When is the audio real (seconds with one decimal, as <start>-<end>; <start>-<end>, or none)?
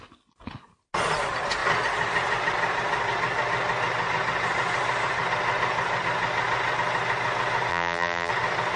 0.0-7.7; 8.3-8.8